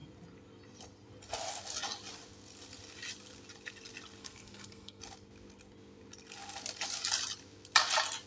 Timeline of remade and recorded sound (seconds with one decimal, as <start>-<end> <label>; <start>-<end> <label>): 0.0-4.2 recorded; 4.2-5.0 remade; 5.0-8.3 recorded